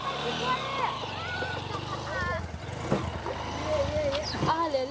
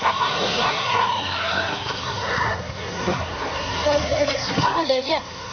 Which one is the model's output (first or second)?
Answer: second